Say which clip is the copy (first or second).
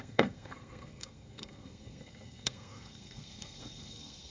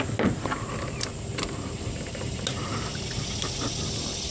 first